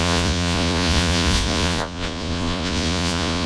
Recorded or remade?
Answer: remade